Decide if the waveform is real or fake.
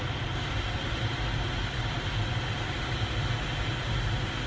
real